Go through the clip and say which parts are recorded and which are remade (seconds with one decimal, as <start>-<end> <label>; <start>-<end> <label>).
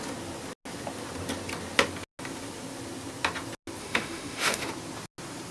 0.0-3.8 recorded; 3.8-4.7 remade; 4.7-5.5 recorded